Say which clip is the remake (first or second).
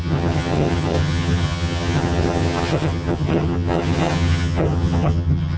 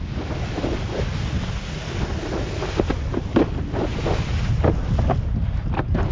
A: first